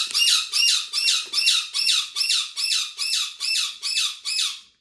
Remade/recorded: remade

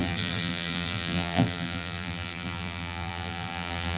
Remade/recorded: remade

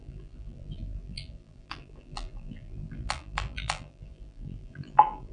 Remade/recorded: remade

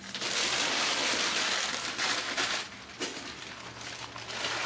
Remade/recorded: recorded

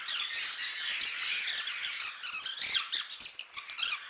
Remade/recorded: recorded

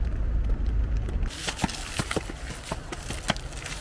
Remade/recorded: recorded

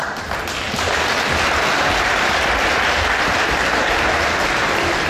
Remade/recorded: recorded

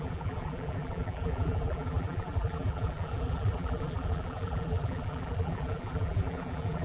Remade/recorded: remade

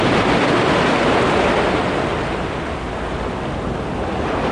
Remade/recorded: recorded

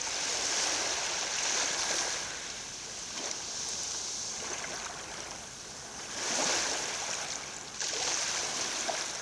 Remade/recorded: recorded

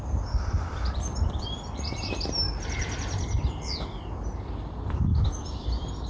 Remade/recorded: remade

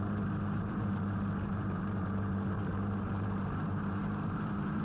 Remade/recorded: remade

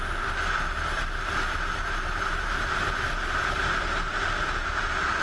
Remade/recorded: recorded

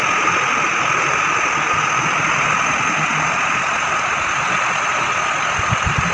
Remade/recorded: recorded